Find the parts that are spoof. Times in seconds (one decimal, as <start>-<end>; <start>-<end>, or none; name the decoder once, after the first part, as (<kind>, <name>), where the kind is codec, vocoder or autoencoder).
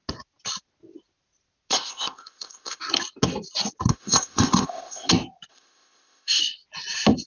1.7-2.8 (codec, ZipCodec); 3.9-5.1; 5.5-6.4